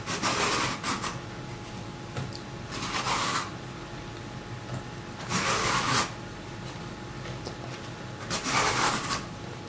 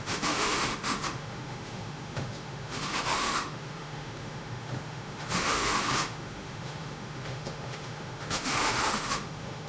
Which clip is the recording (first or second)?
first